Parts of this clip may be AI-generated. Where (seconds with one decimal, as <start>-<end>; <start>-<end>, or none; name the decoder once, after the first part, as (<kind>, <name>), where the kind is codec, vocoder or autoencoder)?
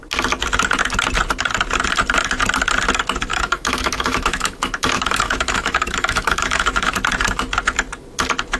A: 3.3-6.9 (autoencoder, DAC-VAE)